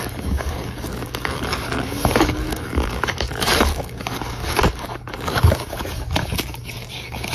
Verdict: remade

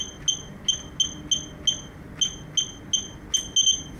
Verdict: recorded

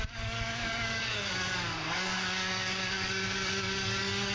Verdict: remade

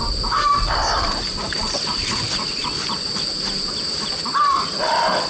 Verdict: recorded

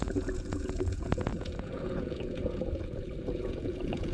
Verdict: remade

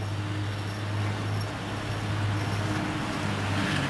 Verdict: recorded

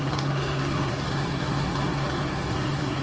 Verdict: remade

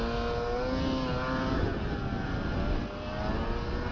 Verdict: recorded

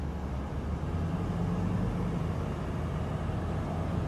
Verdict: recorded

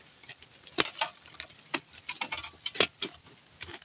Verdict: recorded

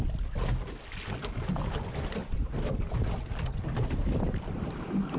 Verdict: recorded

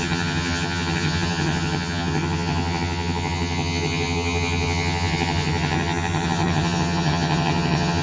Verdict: remade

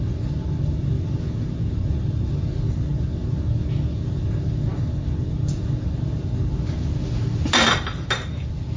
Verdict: recorded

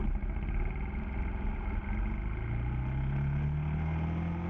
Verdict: recorded